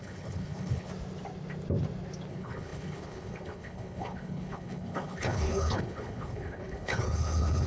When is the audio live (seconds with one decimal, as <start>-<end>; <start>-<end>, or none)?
0.9-2.3